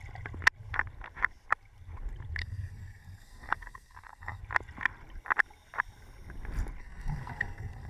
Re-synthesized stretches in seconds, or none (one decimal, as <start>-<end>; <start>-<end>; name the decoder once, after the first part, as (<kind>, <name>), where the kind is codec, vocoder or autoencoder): 2.4-4.4 (codec, SNAC); 6.8-7.9